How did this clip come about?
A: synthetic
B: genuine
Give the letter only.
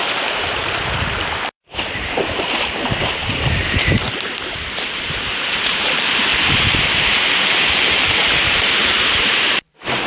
A